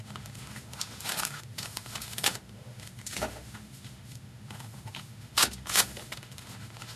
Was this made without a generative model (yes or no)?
no